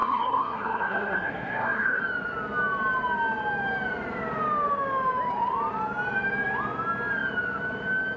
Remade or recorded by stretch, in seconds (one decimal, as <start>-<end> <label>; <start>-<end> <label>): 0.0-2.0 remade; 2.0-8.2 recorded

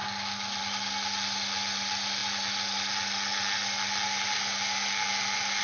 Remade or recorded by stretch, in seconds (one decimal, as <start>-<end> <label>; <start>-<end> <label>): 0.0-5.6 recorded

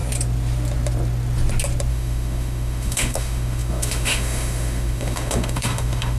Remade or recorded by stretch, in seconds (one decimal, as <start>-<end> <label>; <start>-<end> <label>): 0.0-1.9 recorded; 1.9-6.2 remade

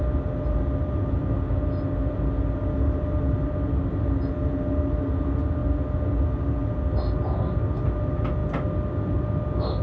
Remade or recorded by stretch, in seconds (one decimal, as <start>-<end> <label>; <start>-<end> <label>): 0.0-9.8 recorded

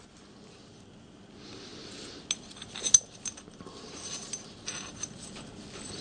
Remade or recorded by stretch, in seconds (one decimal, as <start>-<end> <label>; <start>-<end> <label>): 0.0-6.0 recorded